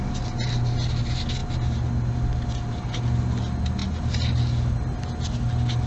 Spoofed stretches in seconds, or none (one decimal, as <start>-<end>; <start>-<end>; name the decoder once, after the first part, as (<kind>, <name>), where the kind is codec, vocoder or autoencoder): none